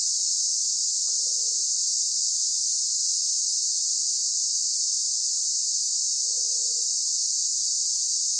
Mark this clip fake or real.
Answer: real